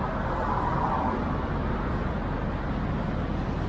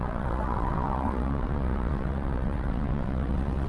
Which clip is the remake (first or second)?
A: second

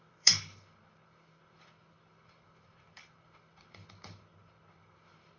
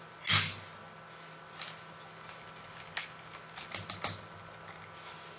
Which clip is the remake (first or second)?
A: first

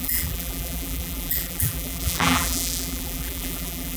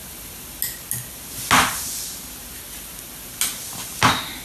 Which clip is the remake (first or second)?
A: first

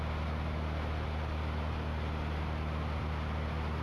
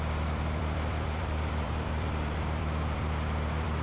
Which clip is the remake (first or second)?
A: second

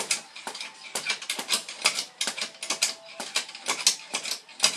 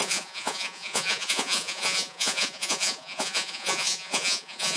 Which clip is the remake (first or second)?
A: second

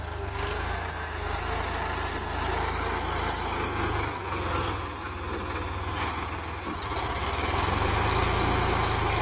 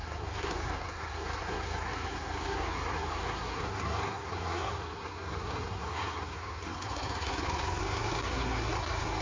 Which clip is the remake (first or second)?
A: second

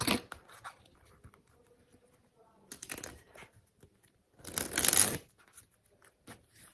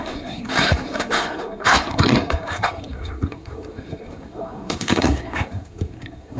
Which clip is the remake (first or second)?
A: second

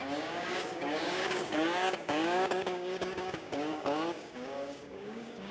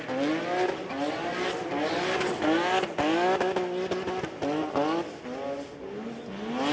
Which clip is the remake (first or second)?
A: first